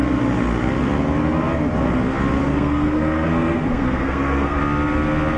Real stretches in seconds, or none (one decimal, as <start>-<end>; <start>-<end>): 0.0-2.4; 4.6-5.4